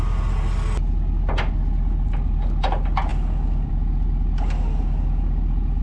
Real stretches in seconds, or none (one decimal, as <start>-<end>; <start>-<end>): 0.0-5.8